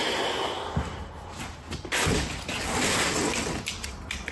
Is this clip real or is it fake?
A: real